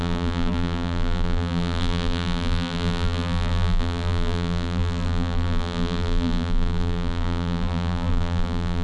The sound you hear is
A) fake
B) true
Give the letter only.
A